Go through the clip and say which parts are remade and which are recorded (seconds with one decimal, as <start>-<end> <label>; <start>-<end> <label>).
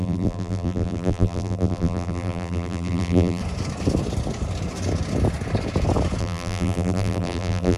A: 0.0-3.4 remade; 3.4-6.2 recorded; 6.2-7.8 remade